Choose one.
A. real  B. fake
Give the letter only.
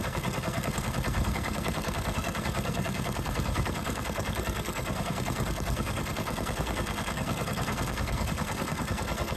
B